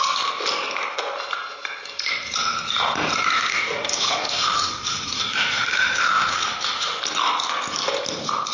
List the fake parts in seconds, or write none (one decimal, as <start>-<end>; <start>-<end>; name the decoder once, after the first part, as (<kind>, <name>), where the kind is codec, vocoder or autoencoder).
3.5-7.0 (autoencoder, DAC-VAE)